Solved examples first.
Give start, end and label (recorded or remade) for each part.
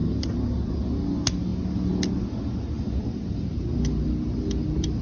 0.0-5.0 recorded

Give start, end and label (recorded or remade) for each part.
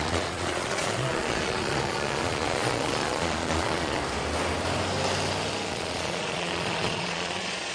0.0-4.0 remade; 4.0-5.7 recorded; 5.7-7.7 remade